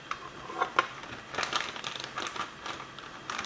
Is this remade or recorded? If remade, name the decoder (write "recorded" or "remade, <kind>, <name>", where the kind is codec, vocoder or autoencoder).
recorded